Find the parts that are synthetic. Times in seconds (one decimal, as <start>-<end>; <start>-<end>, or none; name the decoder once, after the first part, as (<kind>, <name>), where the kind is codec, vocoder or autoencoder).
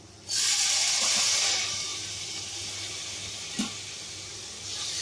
none